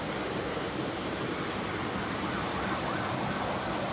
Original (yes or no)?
yes